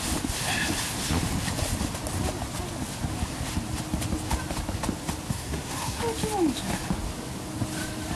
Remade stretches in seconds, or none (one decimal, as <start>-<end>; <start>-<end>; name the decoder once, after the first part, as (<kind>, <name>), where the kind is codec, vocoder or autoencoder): 5.3-6.0 (codec, SNAC)